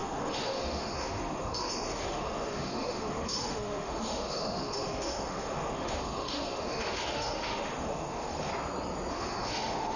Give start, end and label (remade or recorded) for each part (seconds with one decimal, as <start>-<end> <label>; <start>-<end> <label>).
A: 0.0-8.5 remade; 8.5-9.1 recorded; 9.1-10.0 remade